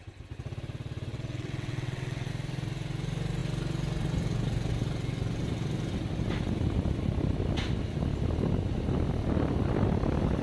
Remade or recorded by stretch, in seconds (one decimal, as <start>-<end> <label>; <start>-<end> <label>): 0.0-1.1 recorded; 1.1-2.3 remade; 2.3-10.4 recorded